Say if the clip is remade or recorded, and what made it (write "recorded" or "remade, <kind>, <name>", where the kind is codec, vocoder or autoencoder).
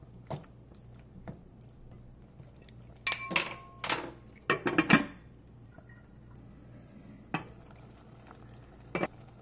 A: recorded